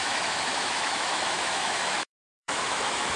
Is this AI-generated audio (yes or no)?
yes